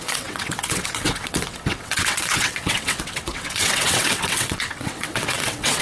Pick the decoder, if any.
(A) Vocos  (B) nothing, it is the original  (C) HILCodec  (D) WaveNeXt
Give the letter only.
D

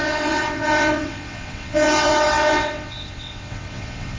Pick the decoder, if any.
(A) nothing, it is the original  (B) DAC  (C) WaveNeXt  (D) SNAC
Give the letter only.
C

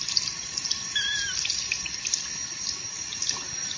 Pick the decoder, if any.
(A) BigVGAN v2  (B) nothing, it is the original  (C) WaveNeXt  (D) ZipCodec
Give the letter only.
B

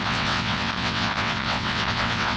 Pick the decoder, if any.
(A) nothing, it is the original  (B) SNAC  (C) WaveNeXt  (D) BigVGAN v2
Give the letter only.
C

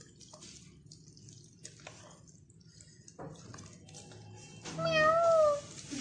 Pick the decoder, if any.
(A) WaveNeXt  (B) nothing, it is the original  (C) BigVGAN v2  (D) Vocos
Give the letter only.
B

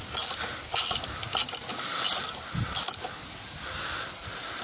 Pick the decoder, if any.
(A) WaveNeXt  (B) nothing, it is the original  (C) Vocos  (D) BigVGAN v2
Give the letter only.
B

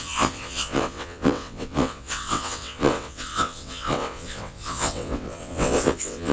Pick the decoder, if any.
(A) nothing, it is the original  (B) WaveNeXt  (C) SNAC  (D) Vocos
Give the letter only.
B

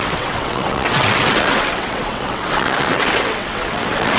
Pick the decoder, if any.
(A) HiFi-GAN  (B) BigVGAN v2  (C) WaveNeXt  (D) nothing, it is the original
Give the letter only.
C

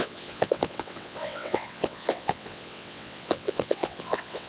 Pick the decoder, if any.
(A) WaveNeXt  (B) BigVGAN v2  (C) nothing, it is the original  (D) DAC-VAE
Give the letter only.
A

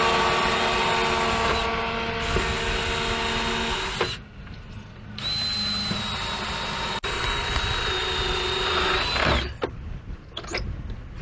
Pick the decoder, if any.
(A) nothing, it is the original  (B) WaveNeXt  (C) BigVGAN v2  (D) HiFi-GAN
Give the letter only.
A